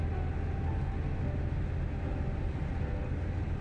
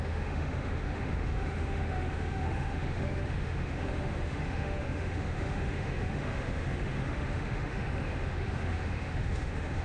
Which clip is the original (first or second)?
first